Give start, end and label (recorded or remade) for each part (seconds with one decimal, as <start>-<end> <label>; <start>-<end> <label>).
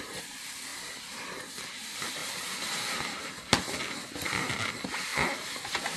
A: 0.0-2.2 remade; 2.2-3.9 recorded; 3.9-5.1 remade; 5.1-6.0 recorded